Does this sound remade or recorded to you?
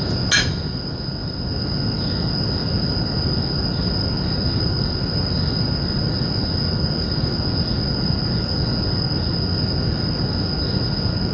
recorded